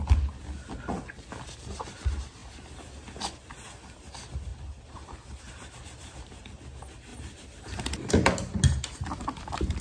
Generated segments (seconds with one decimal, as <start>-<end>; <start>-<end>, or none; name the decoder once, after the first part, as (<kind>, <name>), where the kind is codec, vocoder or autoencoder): none